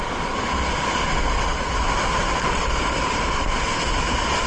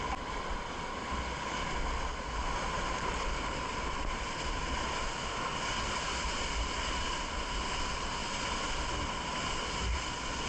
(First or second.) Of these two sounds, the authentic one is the second